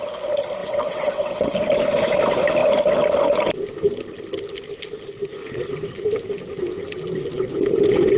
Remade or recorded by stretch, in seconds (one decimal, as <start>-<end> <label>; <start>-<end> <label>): 0.0-0.6 recorded; 0.6-1.6 remade; 1.6-5.4 recorded; 5.4-6.0 remade; 6.0-8.2 recorded